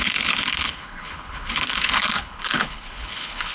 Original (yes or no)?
no